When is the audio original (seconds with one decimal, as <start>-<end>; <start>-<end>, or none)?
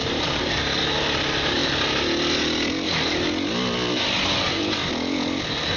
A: 0.6-5.8